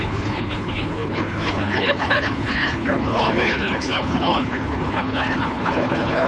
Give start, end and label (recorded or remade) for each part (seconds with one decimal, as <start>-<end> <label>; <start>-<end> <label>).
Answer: 0.0-6.3 remade

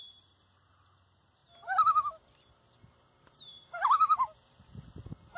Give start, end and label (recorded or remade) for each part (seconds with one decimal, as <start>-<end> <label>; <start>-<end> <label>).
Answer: 0.0-1.4 recorded; 1.4-4.6 remade; 4.6-5.4 recorded

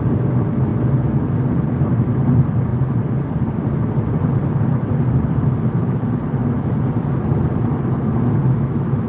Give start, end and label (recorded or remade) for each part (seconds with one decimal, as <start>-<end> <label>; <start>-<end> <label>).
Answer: 0.0-0.7 remade; 0.7-1.6 recorded; 1.6-2.7 remade; 2.7-3.6 recorded; 3.6-6.4 remade; 6.4-8.3 recorded; 8.3-9.1 remade